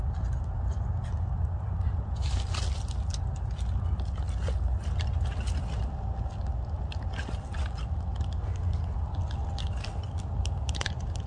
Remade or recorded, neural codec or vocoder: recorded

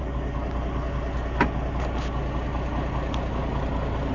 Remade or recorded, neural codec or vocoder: recorded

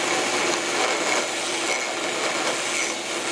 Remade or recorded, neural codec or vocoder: recorded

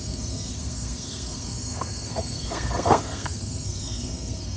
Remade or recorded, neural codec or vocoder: remade, codec, SNAC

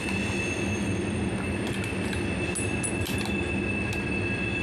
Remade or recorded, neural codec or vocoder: recorded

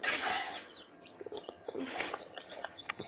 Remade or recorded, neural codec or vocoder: remade, vocoder, HiFi-GAN